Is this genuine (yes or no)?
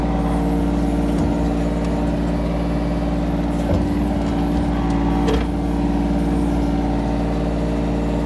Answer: yes